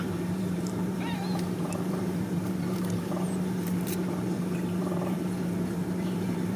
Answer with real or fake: fake